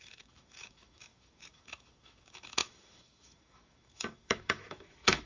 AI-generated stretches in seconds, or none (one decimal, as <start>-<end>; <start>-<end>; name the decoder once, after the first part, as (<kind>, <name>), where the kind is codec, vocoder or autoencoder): 0.0-5.3 (autoencoder, DAC-VAE)